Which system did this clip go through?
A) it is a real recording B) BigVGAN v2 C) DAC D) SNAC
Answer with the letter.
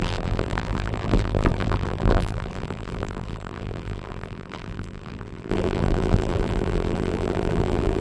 B